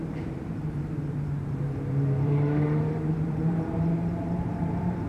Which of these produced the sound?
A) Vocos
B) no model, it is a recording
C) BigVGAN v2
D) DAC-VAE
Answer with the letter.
C